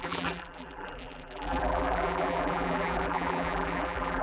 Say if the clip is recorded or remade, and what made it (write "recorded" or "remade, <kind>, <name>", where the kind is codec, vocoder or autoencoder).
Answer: remade, vocoder, BigVGAN v2